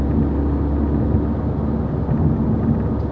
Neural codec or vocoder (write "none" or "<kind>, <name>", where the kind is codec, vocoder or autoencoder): none